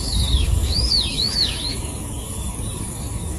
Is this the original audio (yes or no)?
no